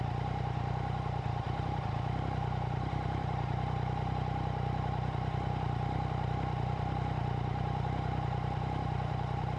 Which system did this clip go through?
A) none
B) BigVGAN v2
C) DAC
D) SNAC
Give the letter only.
B